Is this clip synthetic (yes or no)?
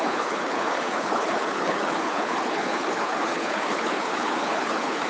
yes